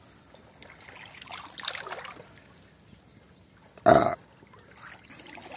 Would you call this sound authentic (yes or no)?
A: yes